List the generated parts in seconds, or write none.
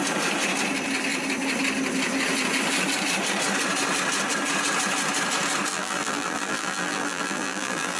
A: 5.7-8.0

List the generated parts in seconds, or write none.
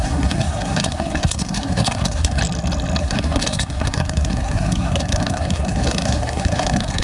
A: 0.0-2.4; 3.0-7.0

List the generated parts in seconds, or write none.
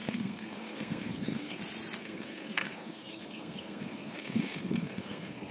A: 0.0-1.6; 2.0-5.5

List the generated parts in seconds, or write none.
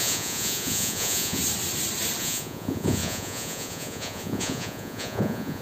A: 0.0-1.4; 2.2-5.6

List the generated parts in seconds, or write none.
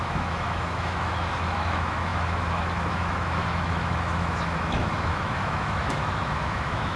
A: 0.0-7.0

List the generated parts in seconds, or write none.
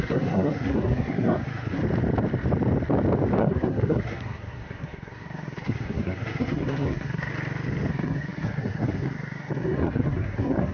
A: 0.0-1.8; 3.4-7.3; 7.9-10.7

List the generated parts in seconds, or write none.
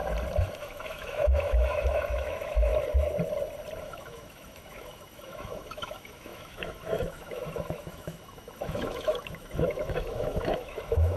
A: 0.6-2.7; 3.8-11.2